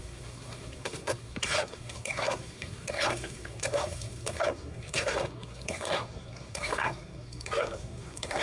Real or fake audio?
fake